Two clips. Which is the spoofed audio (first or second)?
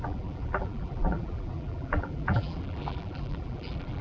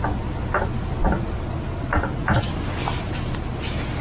first